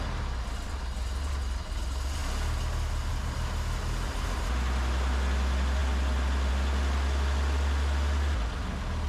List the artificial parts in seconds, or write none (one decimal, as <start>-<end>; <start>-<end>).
none